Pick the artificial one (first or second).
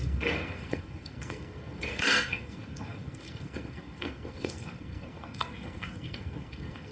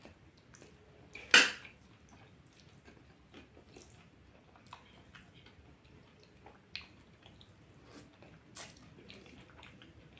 first